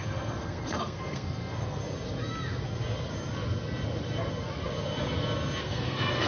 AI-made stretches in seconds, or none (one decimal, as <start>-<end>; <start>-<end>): 0.0-1.8; 5.6-6.3